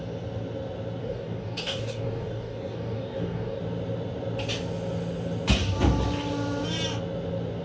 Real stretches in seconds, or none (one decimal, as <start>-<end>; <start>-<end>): 0.0-1.0; 3.6-7.6